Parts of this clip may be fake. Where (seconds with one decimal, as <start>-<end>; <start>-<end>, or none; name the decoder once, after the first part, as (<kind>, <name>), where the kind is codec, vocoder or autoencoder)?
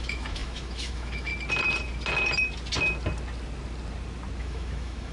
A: 0.0-1.3 (autoencoder, DAC-VAE); 4.4-5.1